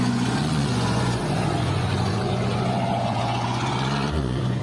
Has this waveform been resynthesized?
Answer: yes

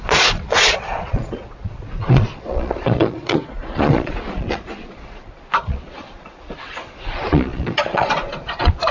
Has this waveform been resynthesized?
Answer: yes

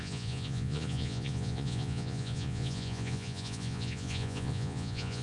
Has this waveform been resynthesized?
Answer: yes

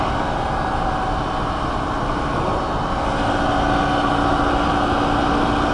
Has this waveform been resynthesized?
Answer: no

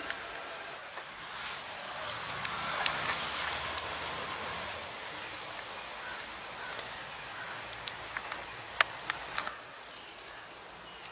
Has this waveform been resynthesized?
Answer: no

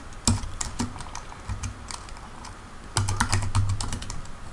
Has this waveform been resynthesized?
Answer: no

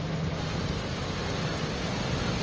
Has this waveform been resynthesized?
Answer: no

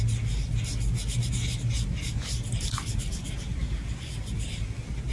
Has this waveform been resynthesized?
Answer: no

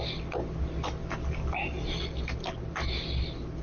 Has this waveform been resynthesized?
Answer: no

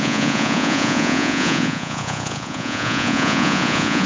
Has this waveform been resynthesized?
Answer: yes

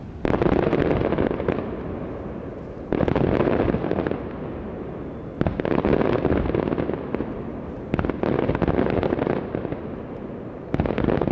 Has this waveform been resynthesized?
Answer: no